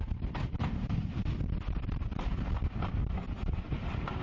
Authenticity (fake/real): real